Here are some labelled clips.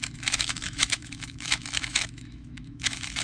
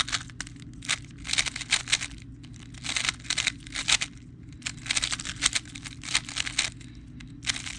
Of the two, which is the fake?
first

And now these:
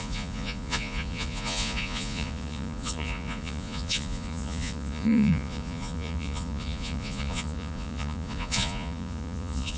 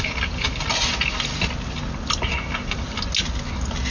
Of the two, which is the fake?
first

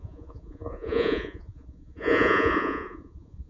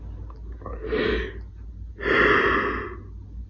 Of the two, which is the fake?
first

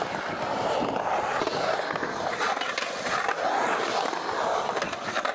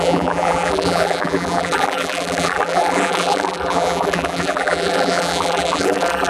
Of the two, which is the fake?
second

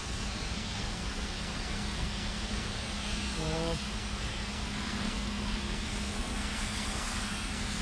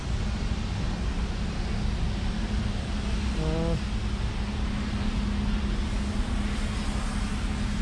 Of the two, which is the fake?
first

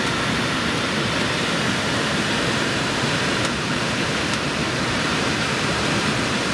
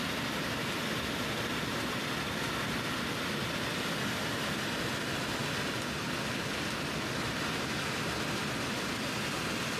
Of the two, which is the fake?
first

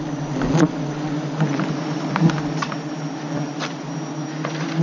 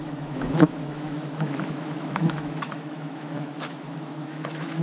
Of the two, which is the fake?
second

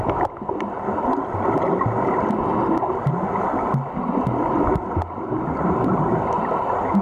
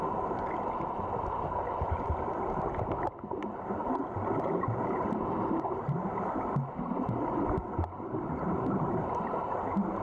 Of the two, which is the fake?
second